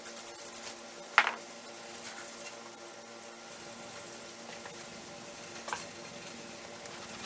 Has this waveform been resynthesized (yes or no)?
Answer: no